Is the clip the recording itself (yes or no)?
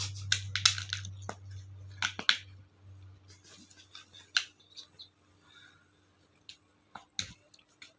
yes